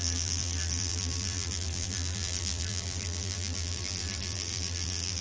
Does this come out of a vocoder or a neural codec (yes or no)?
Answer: yes